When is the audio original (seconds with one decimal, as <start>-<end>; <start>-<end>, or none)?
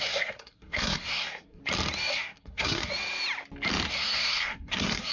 1.6-2.1; 2.9-3.9